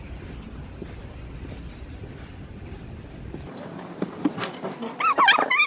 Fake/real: real